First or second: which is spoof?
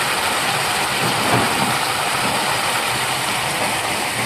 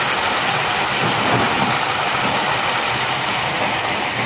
first